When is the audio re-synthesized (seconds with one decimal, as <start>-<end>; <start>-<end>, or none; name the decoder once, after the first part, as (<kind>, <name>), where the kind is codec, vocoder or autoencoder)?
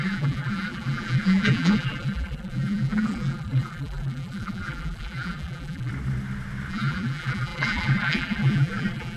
0.0-5.9 (vocoder, BigVGAN v2); 6.7-9.2